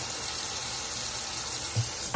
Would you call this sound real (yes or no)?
yes